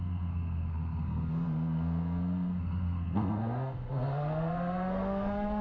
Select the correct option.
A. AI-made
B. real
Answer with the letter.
A